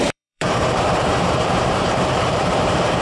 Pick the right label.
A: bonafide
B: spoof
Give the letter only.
B